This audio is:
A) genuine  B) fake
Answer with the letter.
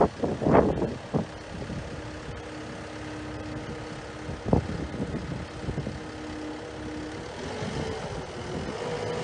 A